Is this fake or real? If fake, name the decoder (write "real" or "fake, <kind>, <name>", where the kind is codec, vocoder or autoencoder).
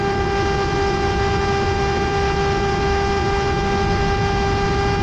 real